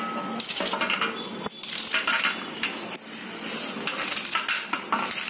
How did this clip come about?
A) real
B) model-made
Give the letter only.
A